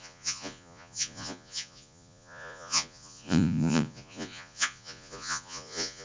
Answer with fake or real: fake